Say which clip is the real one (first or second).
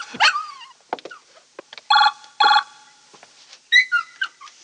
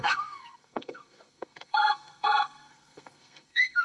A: first